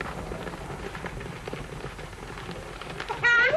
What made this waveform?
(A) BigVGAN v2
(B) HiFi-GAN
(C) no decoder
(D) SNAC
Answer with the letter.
C